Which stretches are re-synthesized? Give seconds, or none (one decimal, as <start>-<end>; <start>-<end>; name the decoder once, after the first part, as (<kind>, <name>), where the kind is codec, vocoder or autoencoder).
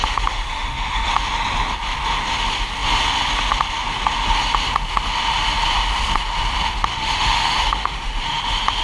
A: 0.0-1.1 (autoencoder, DAC-VAE); 6.9-8.4